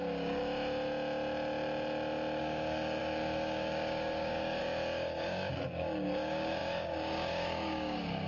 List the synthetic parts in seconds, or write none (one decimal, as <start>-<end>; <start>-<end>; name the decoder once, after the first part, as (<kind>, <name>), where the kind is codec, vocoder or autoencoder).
0.0-0.4 (codec, DAC); 2.4-8.3